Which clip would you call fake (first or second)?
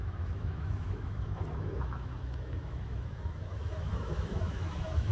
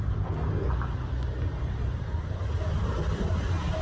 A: first